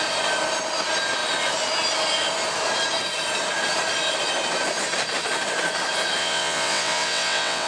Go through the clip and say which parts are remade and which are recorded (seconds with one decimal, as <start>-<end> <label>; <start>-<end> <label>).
0.0-6.2 recorded; 6.2-7.7 remade